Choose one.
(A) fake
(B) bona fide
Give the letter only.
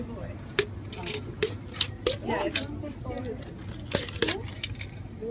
B